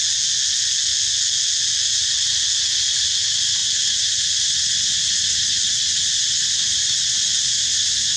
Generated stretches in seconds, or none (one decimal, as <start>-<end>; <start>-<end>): none